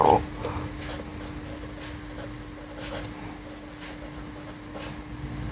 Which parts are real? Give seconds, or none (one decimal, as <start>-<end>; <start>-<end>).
0.0-5.5